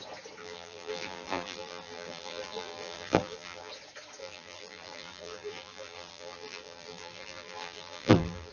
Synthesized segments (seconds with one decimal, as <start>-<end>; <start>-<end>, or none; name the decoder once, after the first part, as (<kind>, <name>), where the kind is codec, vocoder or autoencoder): 0.4-3.7 (vocoder, BigVGAN v2); 4.2-8.5